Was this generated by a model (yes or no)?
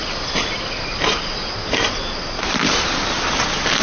no